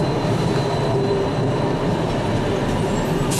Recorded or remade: recorded